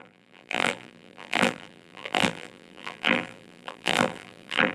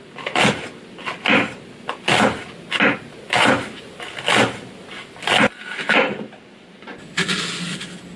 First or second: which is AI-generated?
first